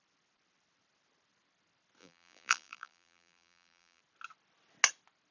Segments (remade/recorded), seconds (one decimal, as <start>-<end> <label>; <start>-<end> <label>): 0.0-2.0 recorded; 2.0-4.0 remade; 4.0-5.3 recorded